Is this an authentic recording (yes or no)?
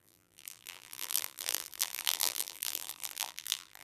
no